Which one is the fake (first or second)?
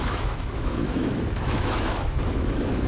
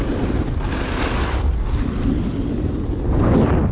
first